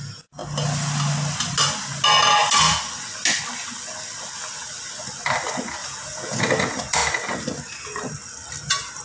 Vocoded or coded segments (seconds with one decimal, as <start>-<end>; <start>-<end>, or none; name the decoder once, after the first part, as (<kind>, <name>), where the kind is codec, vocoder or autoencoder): 5.8-6.4 (vocoder, Vocos)